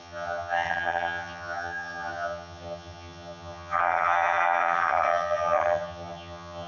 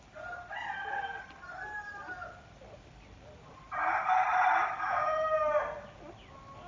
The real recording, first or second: second